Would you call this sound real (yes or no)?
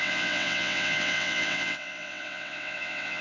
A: no